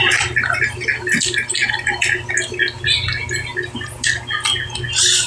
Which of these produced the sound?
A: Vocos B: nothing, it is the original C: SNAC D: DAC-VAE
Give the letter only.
B